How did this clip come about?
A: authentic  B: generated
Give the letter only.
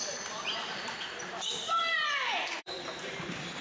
B